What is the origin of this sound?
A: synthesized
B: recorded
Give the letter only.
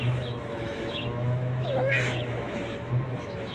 A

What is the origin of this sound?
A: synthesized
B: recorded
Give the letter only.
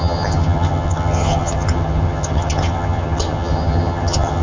A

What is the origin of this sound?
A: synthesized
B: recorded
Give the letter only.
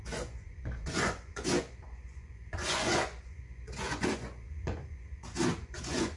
A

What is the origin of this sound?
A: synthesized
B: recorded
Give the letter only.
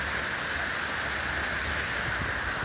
B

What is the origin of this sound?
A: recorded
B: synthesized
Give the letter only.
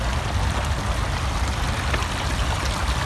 A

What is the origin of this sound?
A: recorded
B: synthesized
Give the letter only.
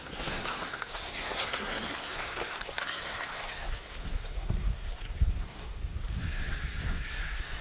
B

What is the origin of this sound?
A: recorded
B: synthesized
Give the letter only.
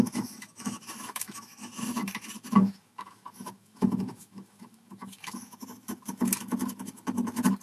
B